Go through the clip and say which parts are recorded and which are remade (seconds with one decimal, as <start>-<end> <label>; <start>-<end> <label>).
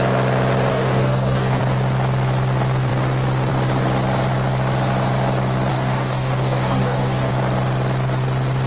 0.0-0.7 recorded; 0.7-1.6 remade; 1.6-5.7 recorded; 5.7-7.3 remade; 7.3-8.7 recorded